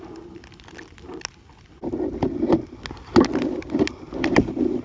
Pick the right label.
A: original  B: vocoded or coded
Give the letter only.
A